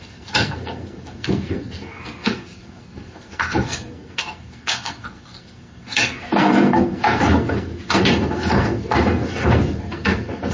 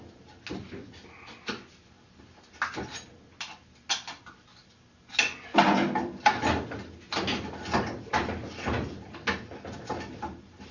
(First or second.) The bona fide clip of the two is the second